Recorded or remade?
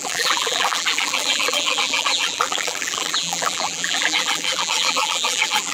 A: remade